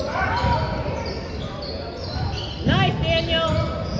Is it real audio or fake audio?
real